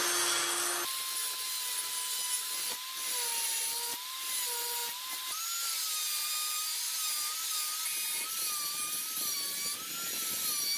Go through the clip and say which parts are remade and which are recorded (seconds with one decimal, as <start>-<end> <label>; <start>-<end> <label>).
0.0-10.8 recorded